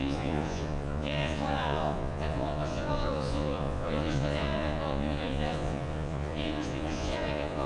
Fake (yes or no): yes